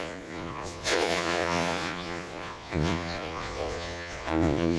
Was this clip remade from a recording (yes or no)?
yes